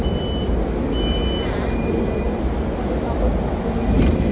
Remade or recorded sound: recorded